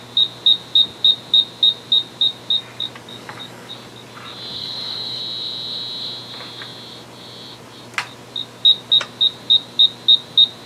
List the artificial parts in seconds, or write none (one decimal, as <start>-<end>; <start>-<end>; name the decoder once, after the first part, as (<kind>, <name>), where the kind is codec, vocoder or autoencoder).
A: 3.1-3.7 (codec, DAC); 4.6-5.2